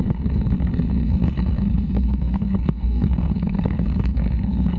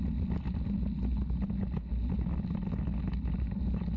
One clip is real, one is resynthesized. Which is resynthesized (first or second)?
first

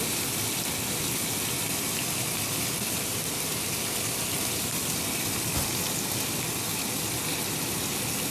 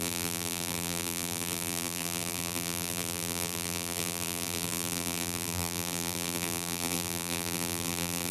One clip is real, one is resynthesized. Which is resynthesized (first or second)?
second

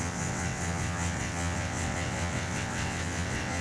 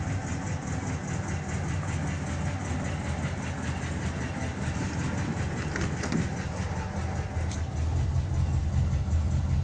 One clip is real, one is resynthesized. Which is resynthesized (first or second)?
first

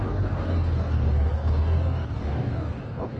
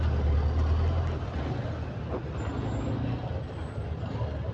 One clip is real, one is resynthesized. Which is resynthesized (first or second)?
first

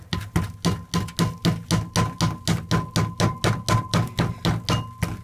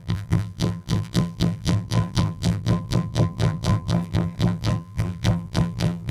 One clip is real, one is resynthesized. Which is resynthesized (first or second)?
second